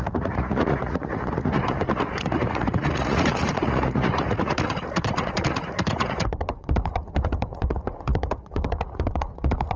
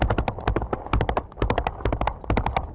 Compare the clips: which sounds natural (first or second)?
second